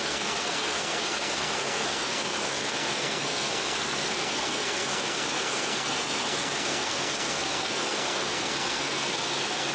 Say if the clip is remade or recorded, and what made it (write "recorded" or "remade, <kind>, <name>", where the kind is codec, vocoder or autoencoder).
remade, codec, SNAC